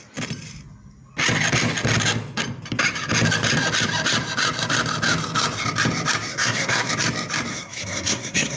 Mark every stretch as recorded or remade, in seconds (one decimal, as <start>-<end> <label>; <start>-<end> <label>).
0.0-6.3 recorded; 6.3-6.9 remade; 6.9-7.5 recorded; 7.5-8.6 remade